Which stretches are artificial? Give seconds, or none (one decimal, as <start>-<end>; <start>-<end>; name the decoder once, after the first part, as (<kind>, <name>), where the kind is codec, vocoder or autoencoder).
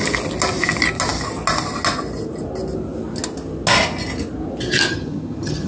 4.9-5.7 (vocoder, HiFi-GAN)